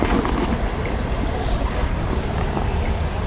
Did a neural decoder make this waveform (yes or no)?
no